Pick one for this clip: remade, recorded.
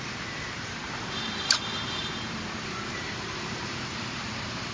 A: remade